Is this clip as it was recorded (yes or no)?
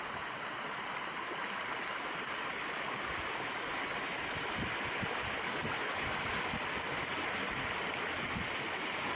yes